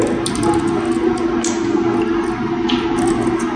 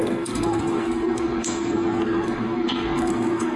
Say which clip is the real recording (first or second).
first